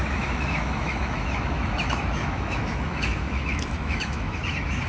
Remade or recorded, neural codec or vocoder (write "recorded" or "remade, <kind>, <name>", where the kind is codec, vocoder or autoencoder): remade, autoencoder, DAC-VAE